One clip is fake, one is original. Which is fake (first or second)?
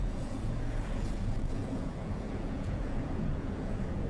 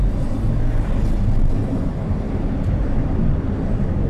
first